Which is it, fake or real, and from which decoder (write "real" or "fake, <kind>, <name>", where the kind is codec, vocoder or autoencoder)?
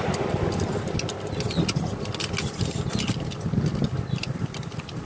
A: real